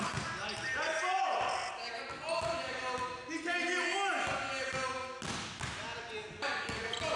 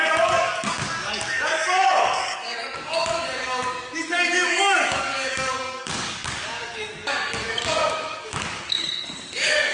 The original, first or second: first